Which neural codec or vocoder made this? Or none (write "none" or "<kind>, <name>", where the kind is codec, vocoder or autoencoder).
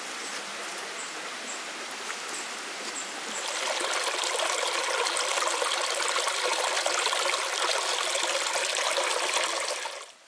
none